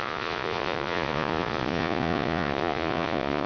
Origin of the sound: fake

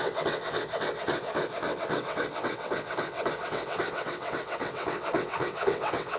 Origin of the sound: fake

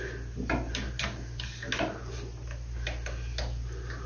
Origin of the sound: real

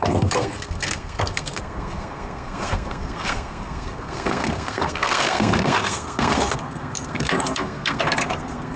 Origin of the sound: fake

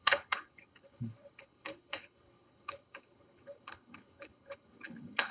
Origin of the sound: fake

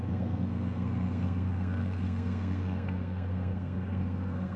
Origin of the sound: fake